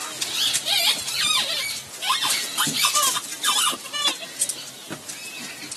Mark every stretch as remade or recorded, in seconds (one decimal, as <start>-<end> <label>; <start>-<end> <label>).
0.0-5.8 recorded